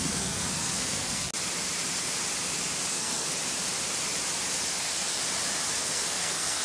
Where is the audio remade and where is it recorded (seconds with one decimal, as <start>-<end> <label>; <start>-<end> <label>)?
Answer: 0.0-1.3 remade; 1.3-2.9 recorded; 2.9-3.3 remade; 3.3-4.8 recorded; 4.8-5.2 remade; 5.2-5.8 recorded; 5.8-6.6 remade